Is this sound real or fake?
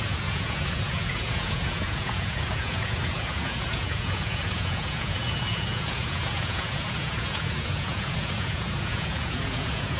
fake